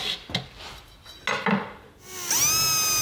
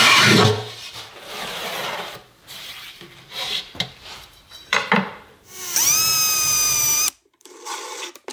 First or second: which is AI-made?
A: second